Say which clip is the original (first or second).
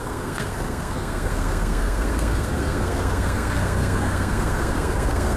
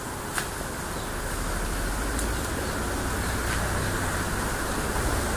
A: second